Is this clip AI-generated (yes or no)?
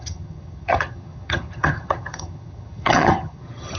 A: yes